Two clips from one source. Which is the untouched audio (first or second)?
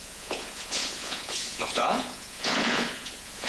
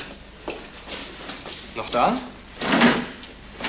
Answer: second